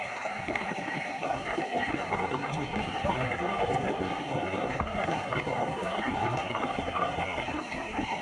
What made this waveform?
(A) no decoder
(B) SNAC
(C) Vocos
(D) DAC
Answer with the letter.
B